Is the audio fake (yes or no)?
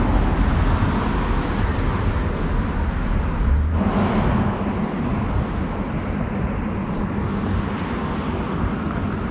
no